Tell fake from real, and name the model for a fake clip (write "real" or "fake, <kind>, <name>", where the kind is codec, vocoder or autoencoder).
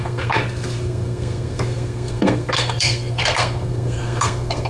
fake, codec, SNAC